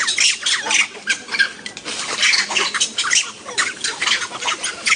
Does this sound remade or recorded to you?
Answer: recorded